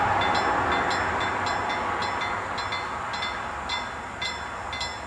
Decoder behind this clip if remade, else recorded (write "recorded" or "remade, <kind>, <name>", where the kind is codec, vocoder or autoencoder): recorded